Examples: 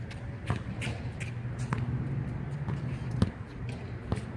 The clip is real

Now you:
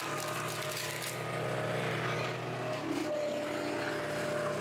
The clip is real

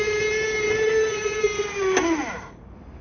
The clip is real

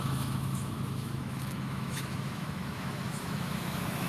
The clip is fake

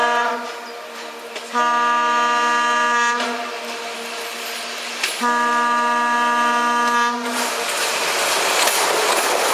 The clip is real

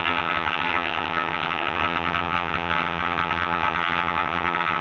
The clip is fake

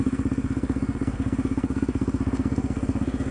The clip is fake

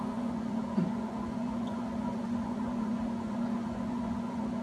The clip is fake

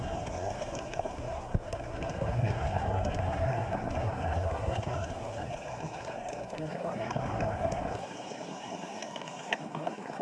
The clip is fake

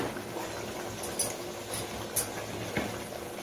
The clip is real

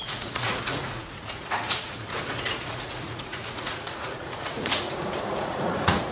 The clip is fake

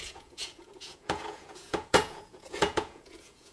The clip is fake